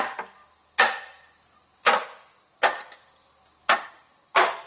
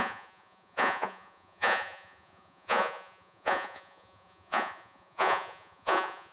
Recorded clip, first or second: first